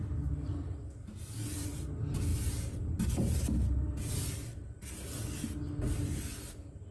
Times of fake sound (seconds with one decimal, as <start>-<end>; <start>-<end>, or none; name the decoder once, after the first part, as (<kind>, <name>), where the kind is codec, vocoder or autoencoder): none